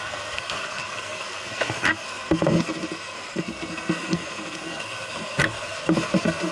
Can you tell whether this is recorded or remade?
remade